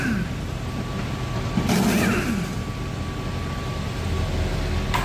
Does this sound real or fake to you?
real